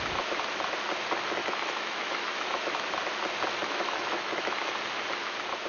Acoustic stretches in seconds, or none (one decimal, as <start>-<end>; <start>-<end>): 0.0-1.4; 2.9-3.6; 4.7-5.7